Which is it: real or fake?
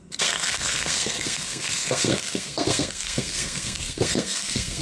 fake